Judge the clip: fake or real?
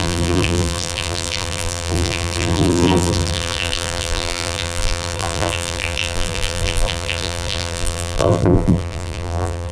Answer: fake